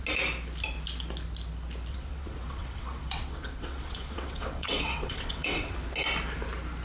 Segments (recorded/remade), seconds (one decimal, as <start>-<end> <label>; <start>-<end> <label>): 0.0-1.9 recorded; 1.9-5.7 remade; 5.7-6.8 recorded

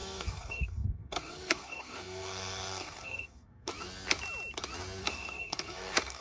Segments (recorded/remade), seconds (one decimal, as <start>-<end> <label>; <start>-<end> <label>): 0.0-3.7 remade; 3.7-5.0 recorded; 5.0-6.2 remade

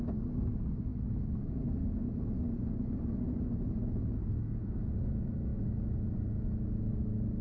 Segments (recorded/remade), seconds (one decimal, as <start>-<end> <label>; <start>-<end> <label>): 0.0-7.4 recorded

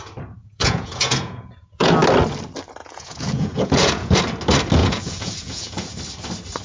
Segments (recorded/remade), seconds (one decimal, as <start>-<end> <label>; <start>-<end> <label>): 0.0-0.4 recorded; 0.4-1.9 remade; 1.9-2.8 recorded; 2.8-4.2 remade; 4.2-4.8 recorded; 4.8-5.9 remade; 5.9-6.6 recorded